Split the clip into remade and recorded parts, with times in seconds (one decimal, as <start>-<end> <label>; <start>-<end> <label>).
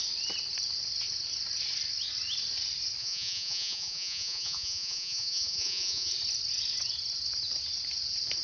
0.0-3.0 recorded; 3.0-6.1 remade; 6.1-8.4 recorded